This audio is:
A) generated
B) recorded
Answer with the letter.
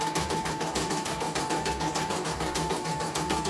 A